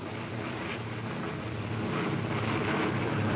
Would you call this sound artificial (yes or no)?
yes